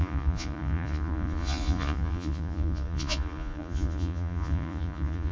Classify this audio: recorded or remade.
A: remade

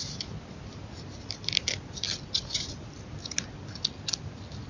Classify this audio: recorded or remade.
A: recorded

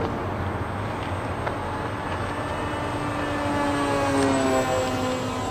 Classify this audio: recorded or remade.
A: recorded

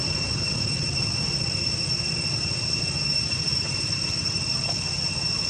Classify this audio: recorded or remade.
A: recorded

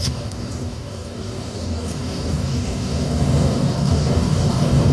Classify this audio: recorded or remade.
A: remade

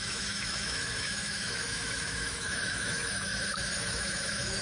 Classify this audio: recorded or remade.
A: remade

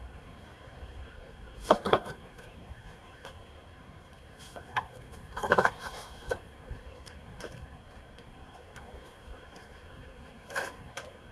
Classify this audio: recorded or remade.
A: remade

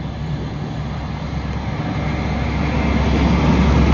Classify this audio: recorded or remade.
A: recorded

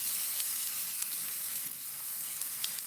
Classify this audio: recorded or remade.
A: remade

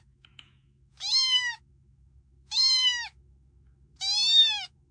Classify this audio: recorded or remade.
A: remade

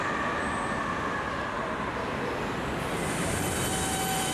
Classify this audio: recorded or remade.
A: recorded